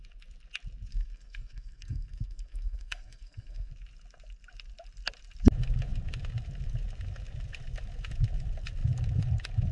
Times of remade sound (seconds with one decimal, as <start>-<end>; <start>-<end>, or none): 0.9-3.7